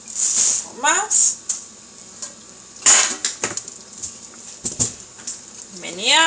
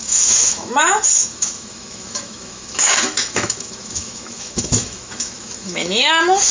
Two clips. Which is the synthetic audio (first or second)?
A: second